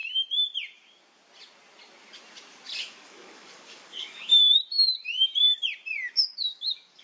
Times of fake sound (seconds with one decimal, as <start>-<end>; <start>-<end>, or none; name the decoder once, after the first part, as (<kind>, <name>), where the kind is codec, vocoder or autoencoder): 2.8-4.3 (codec, DAC); 6.1-7.0